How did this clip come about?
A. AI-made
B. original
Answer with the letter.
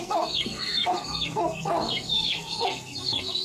A